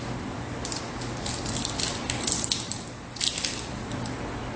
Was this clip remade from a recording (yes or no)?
no